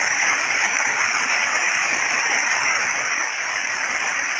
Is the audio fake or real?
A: fake